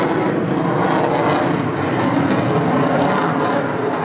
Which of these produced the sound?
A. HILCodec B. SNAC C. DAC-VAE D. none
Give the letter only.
D